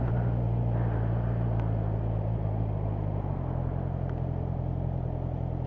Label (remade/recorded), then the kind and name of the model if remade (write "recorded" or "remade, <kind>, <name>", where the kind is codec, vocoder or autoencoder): recorded